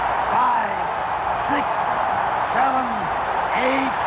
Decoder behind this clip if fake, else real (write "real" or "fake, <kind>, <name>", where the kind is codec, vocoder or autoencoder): real